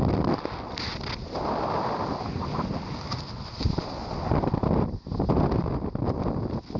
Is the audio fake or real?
real